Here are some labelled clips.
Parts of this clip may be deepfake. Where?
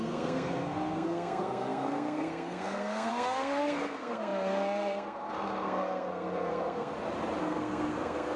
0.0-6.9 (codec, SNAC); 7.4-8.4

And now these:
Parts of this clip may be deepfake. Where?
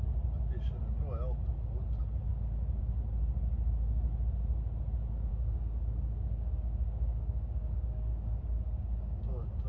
5.3-9.7 (codec, DAC)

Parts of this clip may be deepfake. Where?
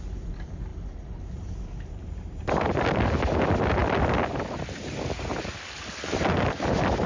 none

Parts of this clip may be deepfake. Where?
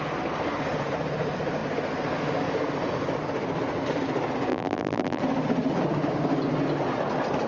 4.5-5.2 (vocoder, BigVGAN v2)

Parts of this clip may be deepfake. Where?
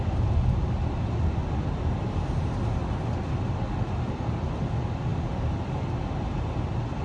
none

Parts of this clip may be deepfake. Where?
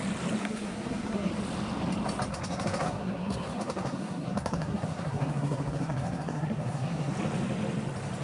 0.4-1.3 (codec, SNAC); 2.3-7.1